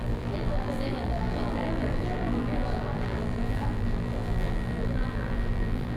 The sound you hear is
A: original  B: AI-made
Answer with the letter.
B